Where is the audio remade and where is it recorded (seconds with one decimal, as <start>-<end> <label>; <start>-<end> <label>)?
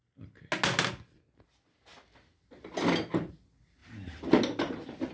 0.0-5.1 recorded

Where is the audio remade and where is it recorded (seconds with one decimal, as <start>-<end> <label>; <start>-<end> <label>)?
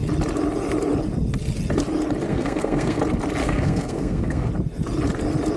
0.0-2.3 recorded; 2.3-3.0 remade; 3.0-3.4 recorded; 3.4-4.5 remade; 4.5-5.6 recorded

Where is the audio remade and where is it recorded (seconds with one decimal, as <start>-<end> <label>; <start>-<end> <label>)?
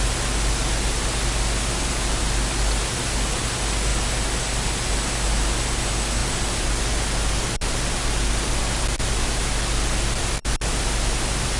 0.0-11.6 recorded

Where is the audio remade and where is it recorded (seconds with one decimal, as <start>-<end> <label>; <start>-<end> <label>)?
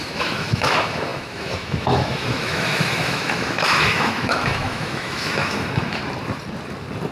0.0-6.0 remade; 6.0-7.1 recorded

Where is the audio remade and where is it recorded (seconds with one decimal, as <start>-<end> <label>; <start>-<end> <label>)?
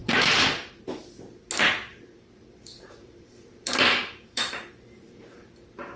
0.0-0.9 remade; 0.9-1.9 recorded; 1.9-5.5 remade; 5.5-6.0 recorded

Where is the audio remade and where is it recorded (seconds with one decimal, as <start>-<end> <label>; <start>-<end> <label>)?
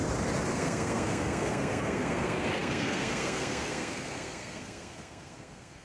0.0-0.5 recorded; 0.5-5.8 remade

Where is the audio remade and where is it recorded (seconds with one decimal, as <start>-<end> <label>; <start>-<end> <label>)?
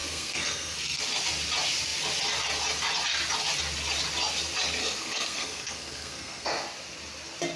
0.0-1.0 remade; 1.0-4.8 recorded; 4.8-6.5 remade; 6.5-7.6 recorded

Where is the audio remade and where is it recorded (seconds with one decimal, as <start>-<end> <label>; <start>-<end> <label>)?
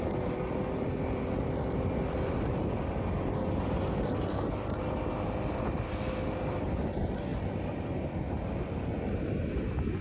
0.0-10.0 recorded